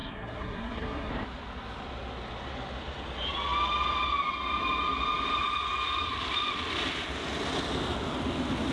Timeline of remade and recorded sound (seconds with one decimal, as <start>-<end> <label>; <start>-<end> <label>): 0.0-1.1 remade; 1.1-8.7 recorded